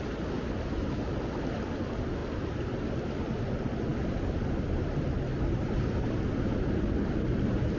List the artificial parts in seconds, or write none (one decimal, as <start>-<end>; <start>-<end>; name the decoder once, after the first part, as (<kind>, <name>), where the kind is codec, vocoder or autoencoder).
3.9-5.9 (vocoder, BigVGAN v2)